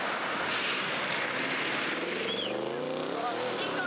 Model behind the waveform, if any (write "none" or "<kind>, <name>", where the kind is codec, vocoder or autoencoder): none